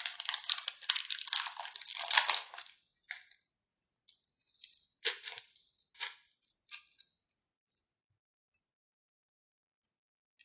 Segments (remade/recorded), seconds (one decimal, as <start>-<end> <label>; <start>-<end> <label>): 0.0-4.2 recorded; 4.2-6.3 remade; 6.3-10.4 recorded